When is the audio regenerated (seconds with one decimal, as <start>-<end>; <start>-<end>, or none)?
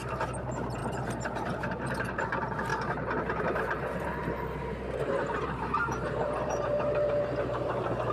0.0-2.7; 3.4-4.2; 5.4-8.1